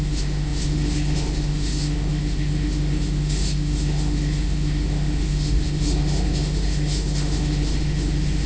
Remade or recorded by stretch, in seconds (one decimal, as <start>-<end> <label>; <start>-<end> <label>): 0.0-8.5 remade